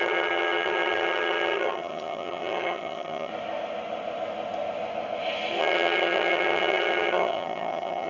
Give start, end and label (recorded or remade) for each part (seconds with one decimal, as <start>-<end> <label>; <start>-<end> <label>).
0.0-3.3 remade; 3.3-5.6 recorded; 5.6-8.1 remade